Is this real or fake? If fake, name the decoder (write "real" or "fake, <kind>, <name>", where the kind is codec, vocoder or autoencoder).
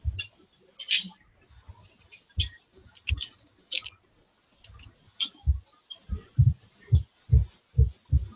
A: real